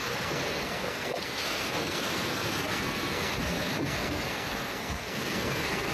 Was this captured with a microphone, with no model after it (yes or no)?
no